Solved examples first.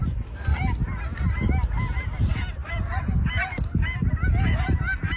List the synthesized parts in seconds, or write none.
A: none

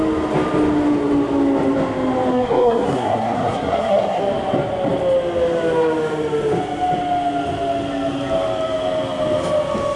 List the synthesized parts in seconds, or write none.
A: 2.3-4.2

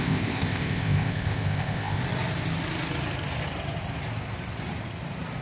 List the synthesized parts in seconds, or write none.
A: 0.0-2.0

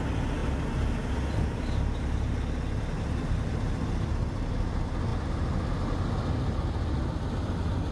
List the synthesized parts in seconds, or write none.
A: none

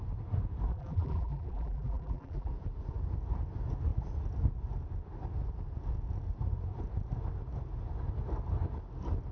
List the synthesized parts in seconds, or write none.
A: 0.7-2.5

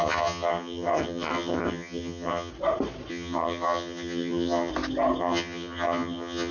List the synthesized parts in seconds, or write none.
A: 0.0-2.5; 3.1-4.7; 5.2-6.5